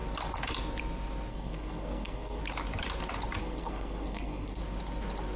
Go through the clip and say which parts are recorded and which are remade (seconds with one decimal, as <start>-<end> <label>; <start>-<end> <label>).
0.0-1.3 recorded; 1.3-2.4 remade; 2.4-3.4 recorded; 3.4-4.6 remade; 4.6-5.4 recorded